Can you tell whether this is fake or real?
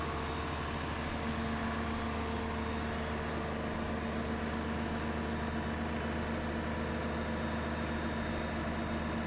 real